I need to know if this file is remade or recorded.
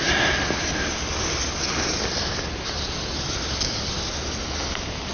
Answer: recorded